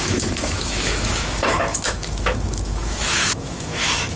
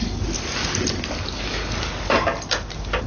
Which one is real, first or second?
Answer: second